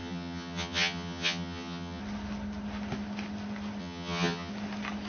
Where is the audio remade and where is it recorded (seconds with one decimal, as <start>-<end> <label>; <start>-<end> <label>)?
0.0-2.0 remade; 2.0-3.8 recorded; 3.8-4.5 remade; 4.5-5.1 recorded